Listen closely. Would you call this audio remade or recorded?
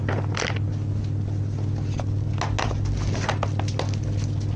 recorded